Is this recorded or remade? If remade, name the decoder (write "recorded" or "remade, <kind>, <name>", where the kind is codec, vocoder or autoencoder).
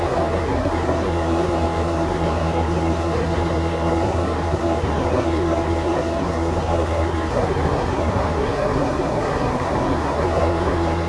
remade, codec, SNAC